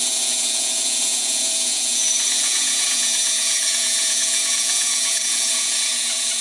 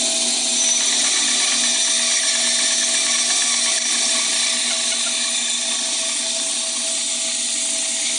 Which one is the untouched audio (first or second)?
second